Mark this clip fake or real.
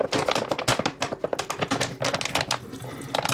real